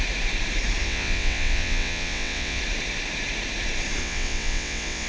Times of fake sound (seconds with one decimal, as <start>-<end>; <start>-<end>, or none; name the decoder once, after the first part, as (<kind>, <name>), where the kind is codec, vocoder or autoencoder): 0.8-2.6 (vocoder, WaveNeXt); 4.0-5.1